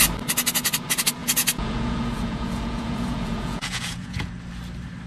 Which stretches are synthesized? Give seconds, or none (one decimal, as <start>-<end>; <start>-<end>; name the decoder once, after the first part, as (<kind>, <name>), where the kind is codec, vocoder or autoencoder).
1.2-4.3 (vocoder, Vocos)